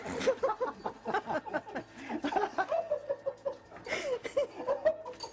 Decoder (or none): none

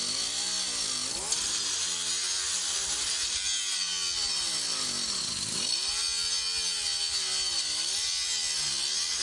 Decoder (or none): none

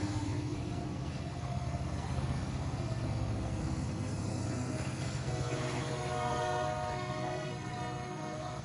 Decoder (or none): codec, SNAC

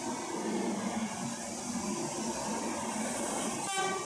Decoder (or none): none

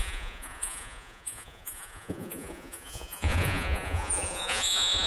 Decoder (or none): vocoder, Vocos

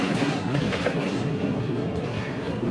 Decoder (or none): codec, SNAC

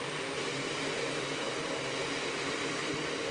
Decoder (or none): none